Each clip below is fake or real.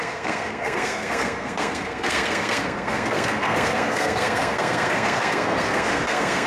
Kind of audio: fake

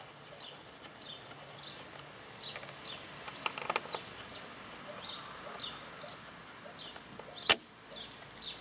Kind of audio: real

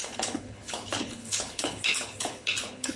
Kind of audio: fake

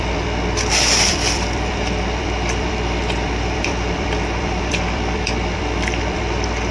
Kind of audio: fake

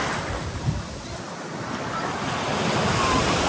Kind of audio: real